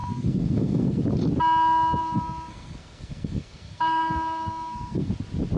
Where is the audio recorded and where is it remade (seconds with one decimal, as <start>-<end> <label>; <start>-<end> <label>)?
0.0-1.0 remade; 1.0-2.0 recorded; 2.0-5.1 remade; 5.1-5.6 recorded